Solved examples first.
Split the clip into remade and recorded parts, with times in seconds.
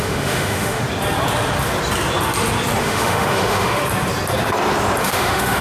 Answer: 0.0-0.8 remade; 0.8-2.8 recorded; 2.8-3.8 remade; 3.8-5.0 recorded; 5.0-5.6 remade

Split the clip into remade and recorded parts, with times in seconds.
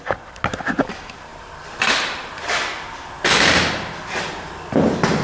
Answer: 0.0-5.2 recorded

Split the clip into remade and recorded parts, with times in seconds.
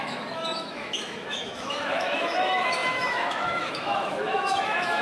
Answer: 0.0-5.0 remade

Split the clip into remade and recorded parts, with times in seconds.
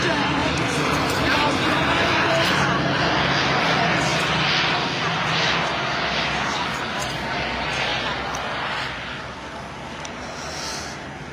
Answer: 0.0-11.3 recorded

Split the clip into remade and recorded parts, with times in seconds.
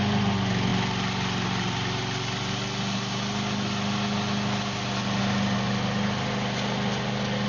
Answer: 0.0-7.5 recorded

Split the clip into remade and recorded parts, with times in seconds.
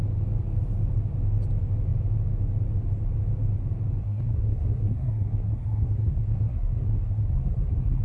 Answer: 0.0-4.0 recorded; 4.0-8.0 remade